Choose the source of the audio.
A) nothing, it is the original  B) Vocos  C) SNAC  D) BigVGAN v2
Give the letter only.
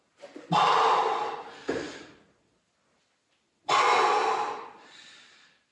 A